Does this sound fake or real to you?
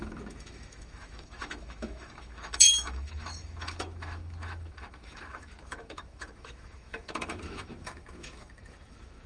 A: fake